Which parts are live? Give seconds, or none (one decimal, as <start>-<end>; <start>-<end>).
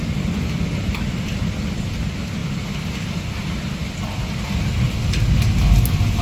0.0-6.2